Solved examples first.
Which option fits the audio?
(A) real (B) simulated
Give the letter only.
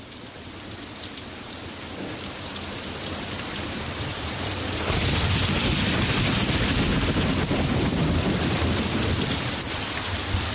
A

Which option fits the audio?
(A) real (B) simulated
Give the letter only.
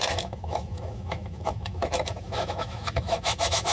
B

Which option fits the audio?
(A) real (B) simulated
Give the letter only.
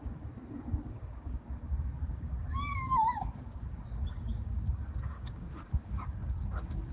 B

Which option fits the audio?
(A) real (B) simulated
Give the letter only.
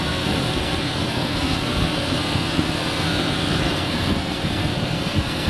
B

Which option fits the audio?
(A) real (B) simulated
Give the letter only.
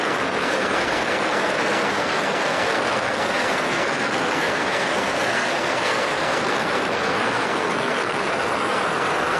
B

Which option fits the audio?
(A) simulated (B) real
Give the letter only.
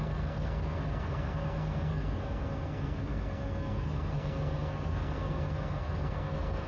A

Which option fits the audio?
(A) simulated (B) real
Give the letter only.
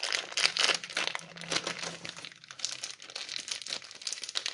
B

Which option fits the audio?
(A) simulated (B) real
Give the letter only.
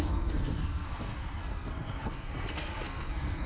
A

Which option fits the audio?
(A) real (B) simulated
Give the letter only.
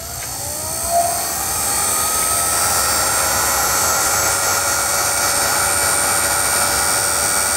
A